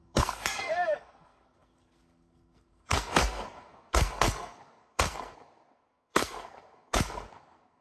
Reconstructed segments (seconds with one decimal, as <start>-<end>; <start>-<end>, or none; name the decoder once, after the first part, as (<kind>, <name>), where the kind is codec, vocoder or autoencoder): 0.0-7.8 (codec, SNAC)